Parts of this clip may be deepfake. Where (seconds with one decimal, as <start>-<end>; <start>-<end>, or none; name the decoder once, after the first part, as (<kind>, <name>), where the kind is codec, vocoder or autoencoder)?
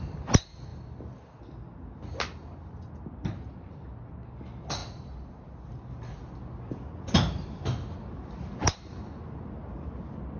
none